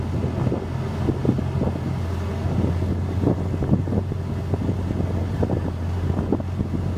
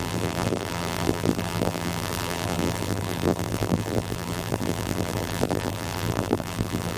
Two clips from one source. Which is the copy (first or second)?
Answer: second